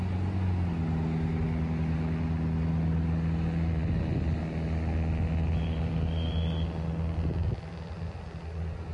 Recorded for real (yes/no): yes